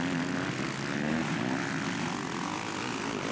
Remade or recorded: recorded